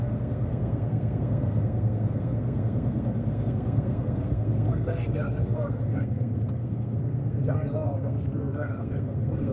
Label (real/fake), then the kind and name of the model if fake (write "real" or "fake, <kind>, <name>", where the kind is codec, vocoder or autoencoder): fake, codec, SNAC